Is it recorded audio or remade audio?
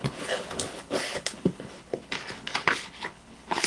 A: remade